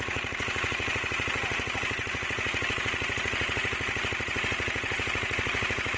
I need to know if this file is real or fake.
fake